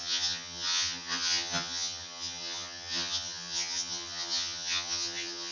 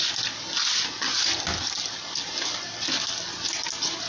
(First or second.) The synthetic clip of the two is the first